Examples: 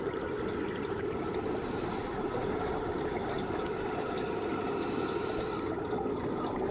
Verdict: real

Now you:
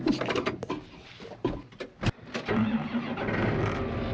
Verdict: real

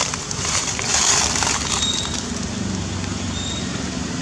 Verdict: real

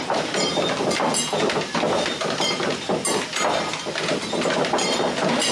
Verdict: real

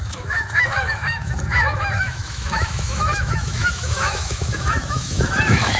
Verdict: fake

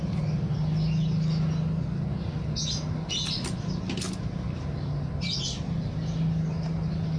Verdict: real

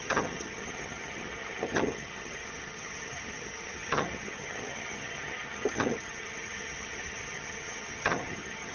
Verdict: fake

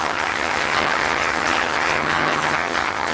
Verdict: fake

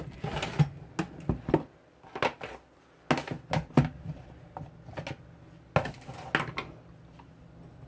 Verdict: real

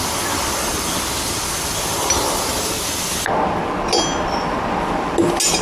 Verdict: real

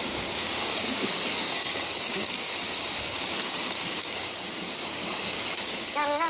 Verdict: fake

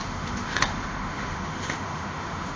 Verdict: fake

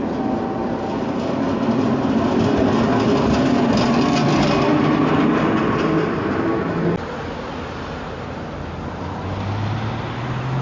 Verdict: real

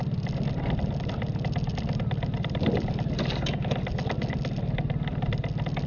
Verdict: real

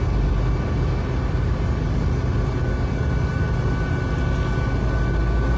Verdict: real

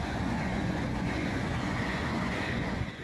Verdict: fake